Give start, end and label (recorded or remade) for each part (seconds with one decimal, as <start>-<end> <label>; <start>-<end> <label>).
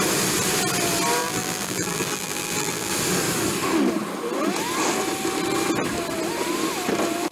0.0-1.2 recorded; 1.2-2.9 remade; 2.9-7.3 recorded